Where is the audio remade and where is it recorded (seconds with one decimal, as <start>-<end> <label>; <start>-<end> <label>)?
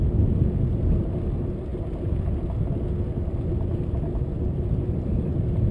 0.0-5.7 recorded